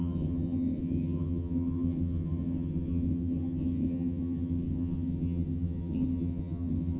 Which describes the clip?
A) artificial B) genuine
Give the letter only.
A